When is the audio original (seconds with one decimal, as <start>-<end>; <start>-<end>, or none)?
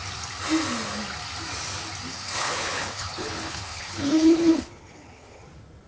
0.0-2.1; 5.4-5.9